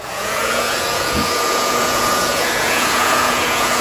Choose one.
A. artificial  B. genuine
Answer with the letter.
A